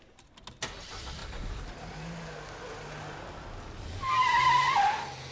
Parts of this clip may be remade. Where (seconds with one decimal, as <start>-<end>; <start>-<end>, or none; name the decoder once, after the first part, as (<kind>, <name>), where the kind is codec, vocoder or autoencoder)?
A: none